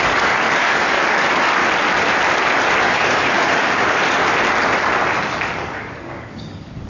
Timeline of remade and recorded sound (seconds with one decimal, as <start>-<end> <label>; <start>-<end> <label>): 0.0-1.6 remade; 1.6-2.8 recorded; 2.8-4.2 remade; 4.2-5.2 recorded; 5.2-6.9 remade